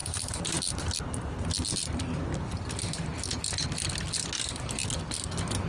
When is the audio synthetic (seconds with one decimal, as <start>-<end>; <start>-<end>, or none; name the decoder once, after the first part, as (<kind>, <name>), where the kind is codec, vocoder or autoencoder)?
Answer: 1.7-3.1 (vocoder, BigVGAN v2)